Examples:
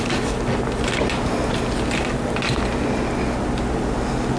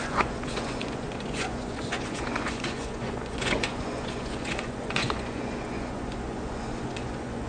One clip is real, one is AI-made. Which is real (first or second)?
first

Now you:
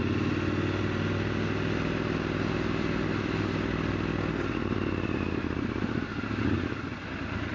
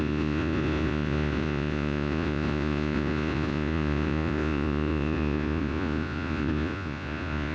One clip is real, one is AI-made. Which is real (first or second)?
first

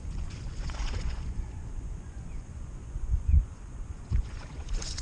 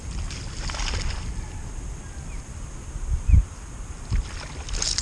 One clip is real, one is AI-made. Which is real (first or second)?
second